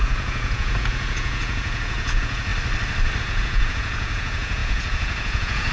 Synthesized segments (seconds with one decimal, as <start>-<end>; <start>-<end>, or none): 0.0-2.5; 3.2-5.7